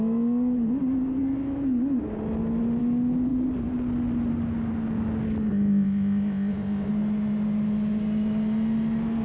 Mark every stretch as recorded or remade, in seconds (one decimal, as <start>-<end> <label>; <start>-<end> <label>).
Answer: 0.0-5.5 recorded; 5.5-6.9 remade; 6.9-9.2 recorded